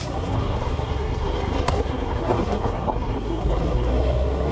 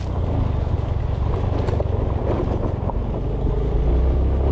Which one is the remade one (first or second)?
first